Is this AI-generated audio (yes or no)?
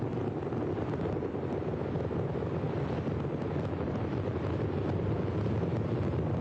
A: no